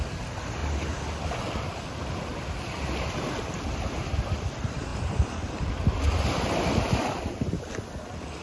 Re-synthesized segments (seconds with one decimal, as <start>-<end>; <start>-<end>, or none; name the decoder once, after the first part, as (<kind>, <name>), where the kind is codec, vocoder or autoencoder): none